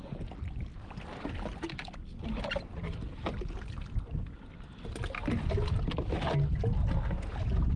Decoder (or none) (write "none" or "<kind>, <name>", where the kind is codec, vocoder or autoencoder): none